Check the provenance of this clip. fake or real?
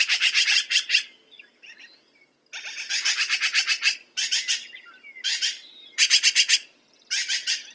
real